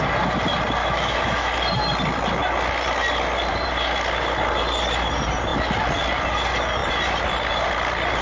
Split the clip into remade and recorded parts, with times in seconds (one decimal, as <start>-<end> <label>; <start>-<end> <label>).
0.0-0.8 recorded; 0.8-1.5 remade; 1.5-8.2 recorded